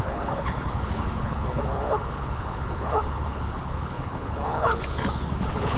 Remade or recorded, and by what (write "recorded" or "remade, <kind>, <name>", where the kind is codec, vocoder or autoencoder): remade, codec, HILCodec